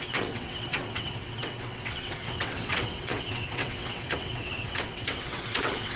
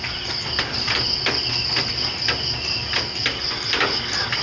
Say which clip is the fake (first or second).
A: first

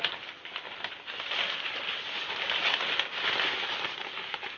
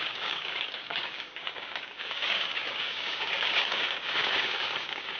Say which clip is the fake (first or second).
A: second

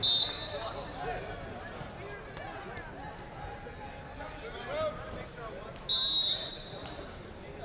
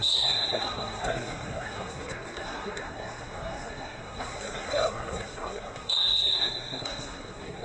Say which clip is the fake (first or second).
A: second